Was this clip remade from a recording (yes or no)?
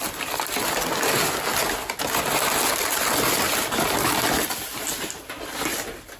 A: no